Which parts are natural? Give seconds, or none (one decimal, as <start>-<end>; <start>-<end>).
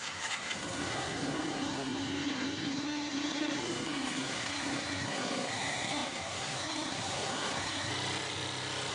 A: 7.9-8.9